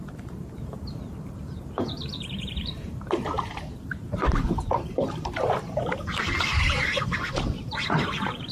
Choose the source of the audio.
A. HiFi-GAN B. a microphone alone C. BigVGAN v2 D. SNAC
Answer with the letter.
C